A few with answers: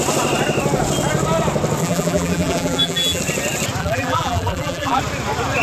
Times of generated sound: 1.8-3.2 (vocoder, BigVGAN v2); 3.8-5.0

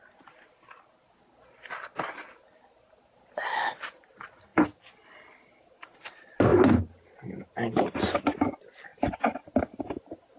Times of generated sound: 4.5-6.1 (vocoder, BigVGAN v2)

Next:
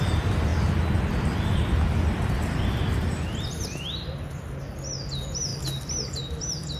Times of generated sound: none

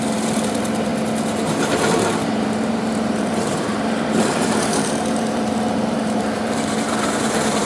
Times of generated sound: 0.0-0.9 (vocoder, BigVGAN v2); 2.2-7.6

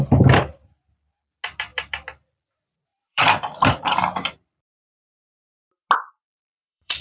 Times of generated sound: 1.7-2.3 (vocoder, BigVGAN v2); 2.9-5.3; 6.1-7.0

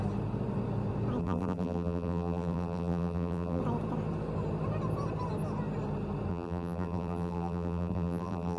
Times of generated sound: 1.2-3.6 (vocoder, BigVGAN v2); 6.3-8.6

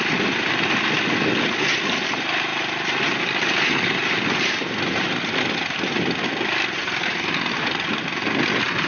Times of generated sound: 2.5-3.0 (vocoder, BigVGAN v2); 4.0-5.1; 6.8-7.4

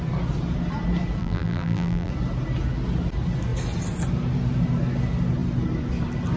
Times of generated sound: 1.2-2.1 (vocoder, BigVGAN v2)